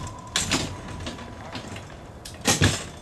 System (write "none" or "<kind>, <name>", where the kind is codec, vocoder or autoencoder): none